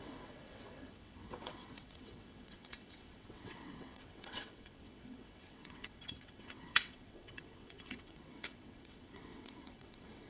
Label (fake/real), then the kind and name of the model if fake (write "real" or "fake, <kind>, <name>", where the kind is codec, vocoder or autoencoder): fake, vocoder, WaveNeXt